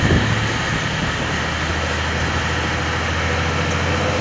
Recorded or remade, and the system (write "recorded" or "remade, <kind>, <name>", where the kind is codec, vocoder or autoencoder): recorded